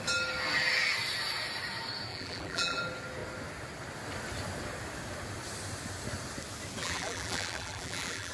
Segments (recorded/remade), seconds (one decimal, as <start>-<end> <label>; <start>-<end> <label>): 0.0-2.1 recorded; 2.1-2.8 remade; 2.8-6.8 recorded; 6.8-8.3 remade